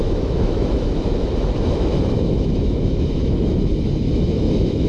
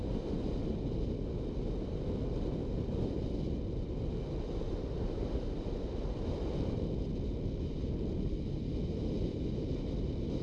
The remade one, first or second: first